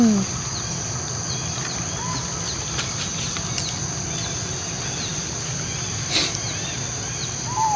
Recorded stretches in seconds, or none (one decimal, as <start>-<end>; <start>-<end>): 0.0-7.8